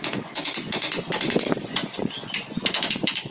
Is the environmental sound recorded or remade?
remade